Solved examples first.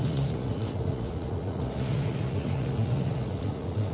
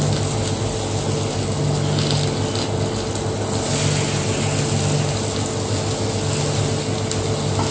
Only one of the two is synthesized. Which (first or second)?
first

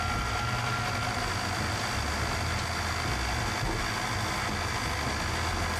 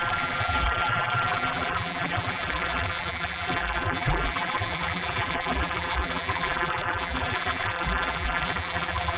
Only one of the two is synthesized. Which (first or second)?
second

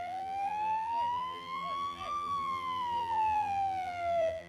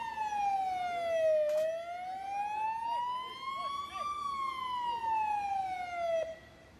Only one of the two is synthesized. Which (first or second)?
first